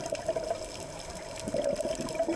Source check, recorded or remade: recorded